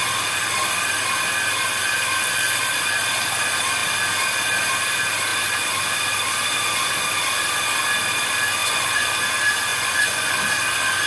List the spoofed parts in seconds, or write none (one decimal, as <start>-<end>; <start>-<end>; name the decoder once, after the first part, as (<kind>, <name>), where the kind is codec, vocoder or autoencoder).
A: 8.6-9.1 (vocoder, Vocos); 9.7-10.4